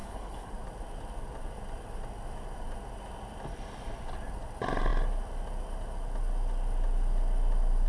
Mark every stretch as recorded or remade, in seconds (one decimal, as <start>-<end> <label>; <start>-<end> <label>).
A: 0.0-0.5 remade; 0.5-7.9 recorded